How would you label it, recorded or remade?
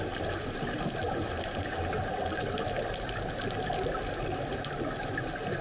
recorded